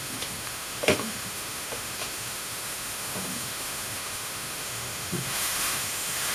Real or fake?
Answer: fake